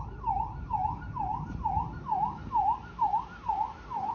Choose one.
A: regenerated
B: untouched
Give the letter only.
B